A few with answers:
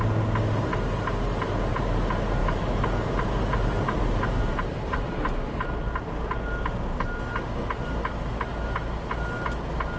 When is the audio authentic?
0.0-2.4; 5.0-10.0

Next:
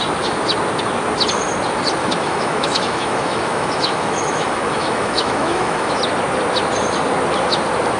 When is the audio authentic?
0.0-2.0; 6.0-8.0